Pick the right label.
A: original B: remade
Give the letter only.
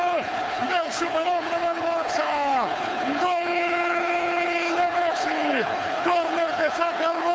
B